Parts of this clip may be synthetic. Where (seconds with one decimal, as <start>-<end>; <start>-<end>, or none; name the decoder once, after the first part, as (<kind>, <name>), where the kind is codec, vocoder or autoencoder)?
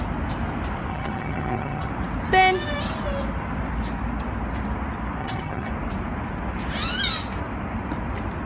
0.9-1.9 (vocoder, HiFi-GAN); 5.2-5.7